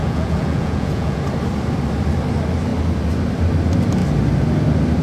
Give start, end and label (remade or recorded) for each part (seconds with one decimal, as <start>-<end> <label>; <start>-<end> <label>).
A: 0.0-1.2 remade; 1.2-5.0 recorded

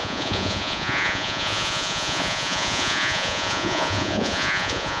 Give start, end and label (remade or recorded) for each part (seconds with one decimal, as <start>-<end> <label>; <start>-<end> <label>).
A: 0.0-5.0 remade

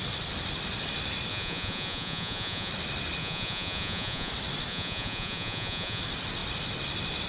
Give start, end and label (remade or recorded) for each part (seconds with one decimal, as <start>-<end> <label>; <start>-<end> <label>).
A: 0.0-1.3 recorded; 1.3-2.7 remade; 2.7-3.2 recorded; 3.2-4.3 remade; 4.3-4.7 recorded; 4.7-6.0 remade; 6.0-7.3 recorded

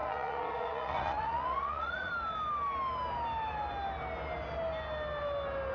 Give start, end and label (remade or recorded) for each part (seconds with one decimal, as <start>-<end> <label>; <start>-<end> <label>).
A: 0.0-2.1 remade; 2.1-5.7 recorded